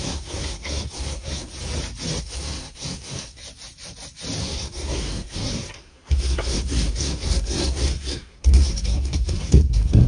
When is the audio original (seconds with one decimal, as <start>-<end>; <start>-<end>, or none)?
1.5-2.2; 3.4-4.4